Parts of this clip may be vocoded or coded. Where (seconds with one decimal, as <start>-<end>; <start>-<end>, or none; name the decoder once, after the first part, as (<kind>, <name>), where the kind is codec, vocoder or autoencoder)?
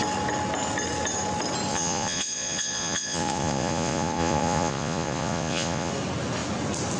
1.7-5.9 (vocoder, Vocos)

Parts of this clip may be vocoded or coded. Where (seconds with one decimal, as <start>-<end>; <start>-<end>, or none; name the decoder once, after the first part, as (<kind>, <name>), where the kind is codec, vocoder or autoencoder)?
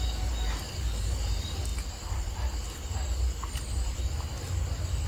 none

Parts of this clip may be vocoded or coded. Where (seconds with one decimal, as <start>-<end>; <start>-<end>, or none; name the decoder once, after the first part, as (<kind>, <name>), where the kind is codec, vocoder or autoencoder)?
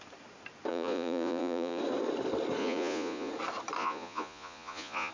0.7-1.8 (vocoder, Vocos); 2.6-3.3; 3.8-5.1